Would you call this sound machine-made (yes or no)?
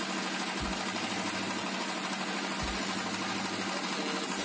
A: no